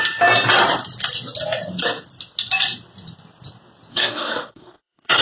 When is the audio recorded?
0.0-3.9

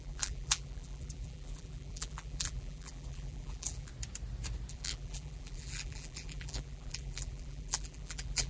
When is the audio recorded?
3.9-4.7